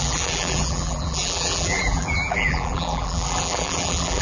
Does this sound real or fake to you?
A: fake